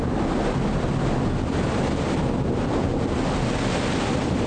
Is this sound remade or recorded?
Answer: recorded